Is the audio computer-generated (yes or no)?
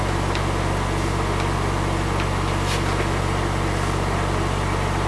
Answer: no